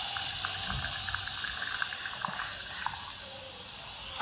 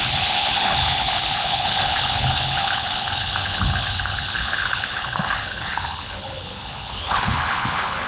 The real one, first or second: first